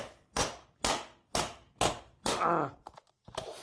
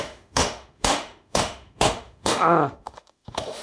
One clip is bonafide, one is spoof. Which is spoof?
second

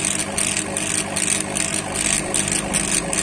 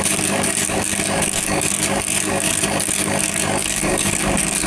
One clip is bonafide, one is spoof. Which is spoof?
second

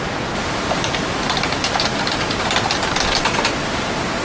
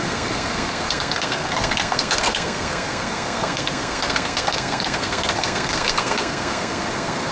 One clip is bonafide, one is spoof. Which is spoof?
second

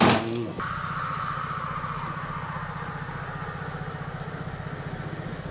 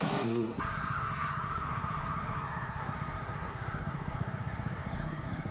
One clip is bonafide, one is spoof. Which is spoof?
second